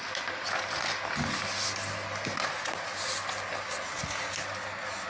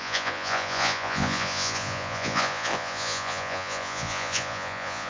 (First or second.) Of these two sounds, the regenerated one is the second